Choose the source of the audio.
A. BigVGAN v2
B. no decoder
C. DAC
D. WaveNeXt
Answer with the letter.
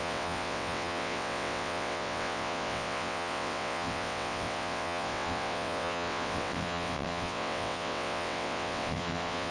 D